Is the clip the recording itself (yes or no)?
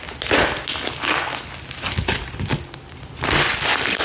yes